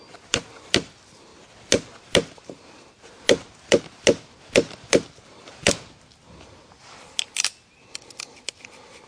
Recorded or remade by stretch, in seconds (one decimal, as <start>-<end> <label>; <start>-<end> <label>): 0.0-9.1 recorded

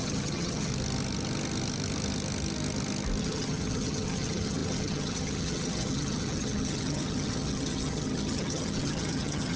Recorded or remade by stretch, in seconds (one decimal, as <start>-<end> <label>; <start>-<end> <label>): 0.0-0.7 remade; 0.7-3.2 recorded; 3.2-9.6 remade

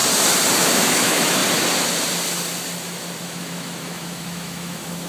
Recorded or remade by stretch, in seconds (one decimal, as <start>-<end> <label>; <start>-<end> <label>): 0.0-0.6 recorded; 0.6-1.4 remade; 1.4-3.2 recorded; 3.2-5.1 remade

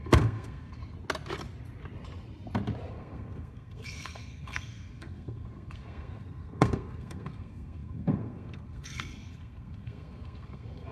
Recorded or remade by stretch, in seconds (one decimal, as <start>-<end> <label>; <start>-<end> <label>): 0.0-0.8 remade; 0.8-2.9 recorded; 2.9-10.9 remade

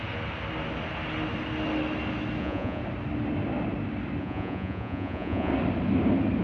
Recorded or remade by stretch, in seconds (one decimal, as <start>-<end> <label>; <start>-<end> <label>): 0.0-2.4 recorded; 2.4-2.8 remade; 2.8-4.2 recorded; 4.2-5.5 remade; 5.5-6.4 recorded

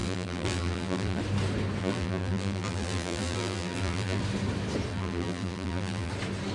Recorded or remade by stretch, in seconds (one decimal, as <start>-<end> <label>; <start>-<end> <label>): 0.0-1.2 remade; 1.2-1.8 recorded; 1.8-4.2 remade; 4.2-4.9 recorded; 4.9-6.1 remade; 6.1-6.5 recorded